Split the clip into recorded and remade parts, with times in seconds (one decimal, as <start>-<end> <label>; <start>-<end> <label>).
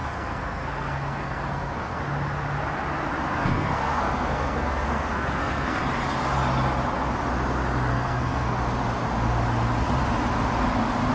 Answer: 0.0-2.0 remade; 2.0-3.4 recorded; 3.4-5.8 remade; 5.8-7.9 recorded; 7.9-8.6 remade; 8.6-11.1 recorded